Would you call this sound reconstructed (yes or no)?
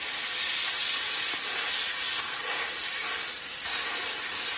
no